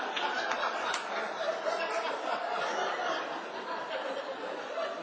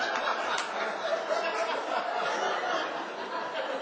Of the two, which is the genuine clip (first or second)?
second